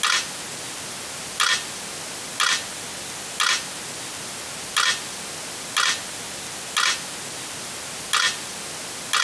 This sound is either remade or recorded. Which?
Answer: recorded